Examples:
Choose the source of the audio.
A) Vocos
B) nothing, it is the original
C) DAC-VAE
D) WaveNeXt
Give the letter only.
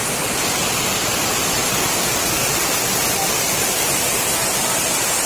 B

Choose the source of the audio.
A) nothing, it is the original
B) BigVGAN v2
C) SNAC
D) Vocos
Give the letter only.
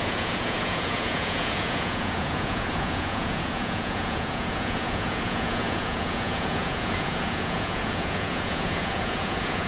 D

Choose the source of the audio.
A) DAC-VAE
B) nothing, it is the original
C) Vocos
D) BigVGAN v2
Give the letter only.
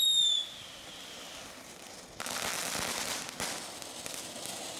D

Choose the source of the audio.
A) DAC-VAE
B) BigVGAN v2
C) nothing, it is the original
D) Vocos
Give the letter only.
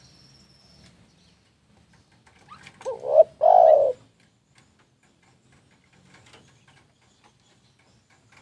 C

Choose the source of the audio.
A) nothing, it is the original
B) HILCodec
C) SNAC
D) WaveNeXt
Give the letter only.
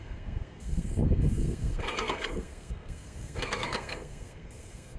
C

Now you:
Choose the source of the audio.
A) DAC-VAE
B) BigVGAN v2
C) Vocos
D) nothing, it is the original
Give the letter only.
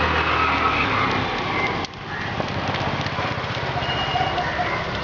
D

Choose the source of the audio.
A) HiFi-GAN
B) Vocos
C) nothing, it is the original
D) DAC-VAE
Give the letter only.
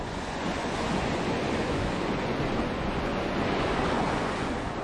B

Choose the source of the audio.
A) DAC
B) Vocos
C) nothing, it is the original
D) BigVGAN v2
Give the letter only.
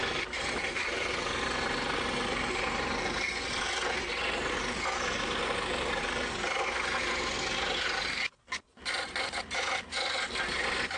C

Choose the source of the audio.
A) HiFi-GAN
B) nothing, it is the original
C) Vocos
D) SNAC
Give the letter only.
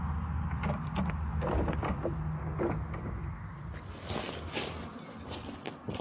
B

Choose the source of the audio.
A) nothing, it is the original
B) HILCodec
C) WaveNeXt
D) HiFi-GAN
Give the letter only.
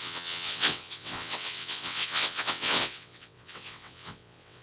C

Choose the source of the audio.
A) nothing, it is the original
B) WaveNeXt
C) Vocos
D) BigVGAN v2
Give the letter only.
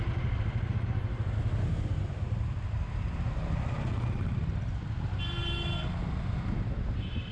A